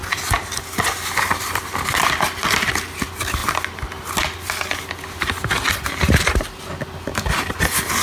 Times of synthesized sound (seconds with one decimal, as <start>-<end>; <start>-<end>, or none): none